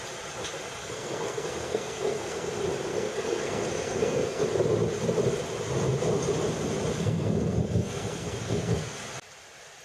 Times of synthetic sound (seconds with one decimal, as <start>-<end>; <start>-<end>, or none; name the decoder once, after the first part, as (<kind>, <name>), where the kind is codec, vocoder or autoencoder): 0.8-2.5 (codec, SNAC); 2.9-4.4; 7.0-9.0

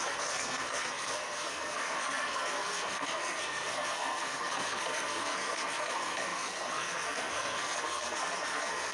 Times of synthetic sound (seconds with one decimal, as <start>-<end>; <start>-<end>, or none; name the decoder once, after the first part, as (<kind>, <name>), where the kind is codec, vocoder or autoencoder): 0.0-8.9 (codec, SNAC)

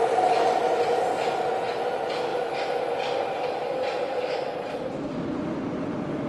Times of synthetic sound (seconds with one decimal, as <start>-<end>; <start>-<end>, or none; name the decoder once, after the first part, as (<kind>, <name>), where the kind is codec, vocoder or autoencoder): none

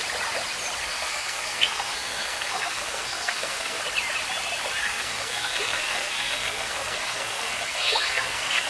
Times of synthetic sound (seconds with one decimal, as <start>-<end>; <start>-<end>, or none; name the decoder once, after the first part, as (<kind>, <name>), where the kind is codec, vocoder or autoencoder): 0.8-3.8 (codec, SNAC); 4.8-8.7

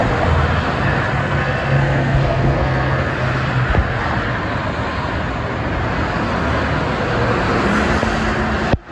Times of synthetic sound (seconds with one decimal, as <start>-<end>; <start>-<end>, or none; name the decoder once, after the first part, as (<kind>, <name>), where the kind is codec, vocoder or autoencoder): 1.2-3.1 (codec, SNAC)

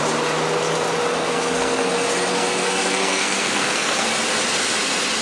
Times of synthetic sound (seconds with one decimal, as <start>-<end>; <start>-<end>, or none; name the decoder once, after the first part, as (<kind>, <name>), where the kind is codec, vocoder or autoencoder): 1.2-1.9 (codec, SNAC); 2.3-4.1

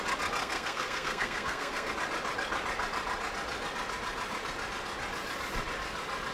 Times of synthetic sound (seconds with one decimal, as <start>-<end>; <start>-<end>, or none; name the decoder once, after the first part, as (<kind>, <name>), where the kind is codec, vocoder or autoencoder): 0.4-1.9 (codec, SNAC)